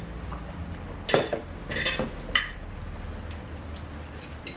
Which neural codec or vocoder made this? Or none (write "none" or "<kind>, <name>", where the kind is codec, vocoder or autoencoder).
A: none